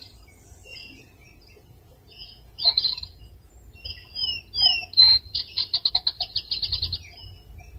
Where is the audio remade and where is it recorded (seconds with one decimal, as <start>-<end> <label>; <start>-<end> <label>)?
0.0-0.6 recorded; 0.6-3.5 remade; 3.5-7.8 recorded